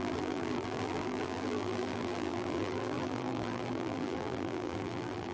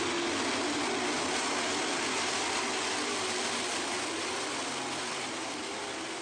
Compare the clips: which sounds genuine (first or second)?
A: second